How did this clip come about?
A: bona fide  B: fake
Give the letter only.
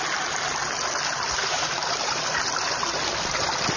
B